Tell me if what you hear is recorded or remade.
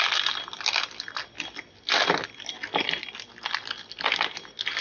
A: recorded